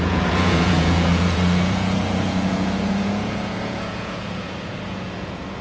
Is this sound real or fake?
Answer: fake